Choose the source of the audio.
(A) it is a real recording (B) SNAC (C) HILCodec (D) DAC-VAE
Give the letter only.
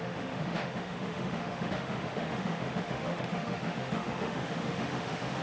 D